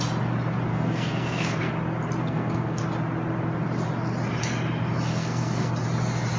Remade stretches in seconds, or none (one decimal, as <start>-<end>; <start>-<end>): 0.7-1.7; 2.2-2.8; 5.1-5.7